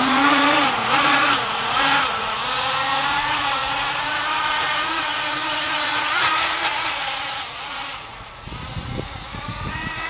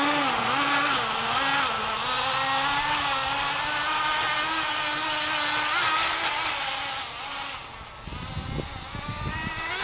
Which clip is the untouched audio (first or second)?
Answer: second